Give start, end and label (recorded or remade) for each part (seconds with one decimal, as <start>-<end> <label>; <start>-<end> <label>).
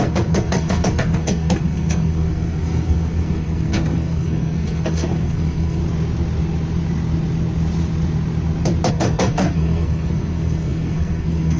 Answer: 0.0-5.8 remade; 5.8-8.9 recorded; 8.9-11.6 remade